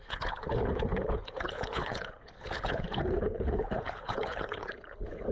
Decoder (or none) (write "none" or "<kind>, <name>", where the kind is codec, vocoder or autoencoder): codec, HILCodec